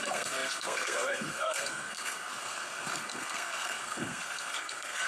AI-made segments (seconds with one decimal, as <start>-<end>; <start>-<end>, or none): 0.0-5.1